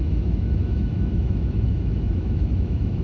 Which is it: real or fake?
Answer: fake